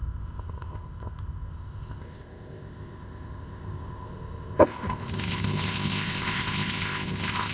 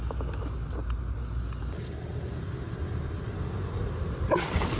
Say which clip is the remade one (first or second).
first